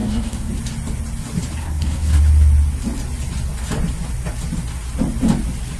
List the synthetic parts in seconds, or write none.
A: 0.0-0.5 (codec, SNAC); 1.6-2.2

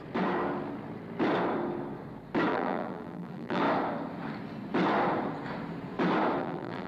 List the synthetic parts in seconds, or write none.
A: 2.5-3.6 (vocoder, BigVGAN v2); 6.4-6.9